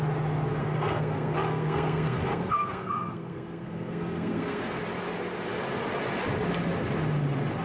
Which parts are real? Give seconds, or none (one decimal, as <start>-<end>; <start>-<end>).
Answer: 0.0-0.6; 4.8-7.6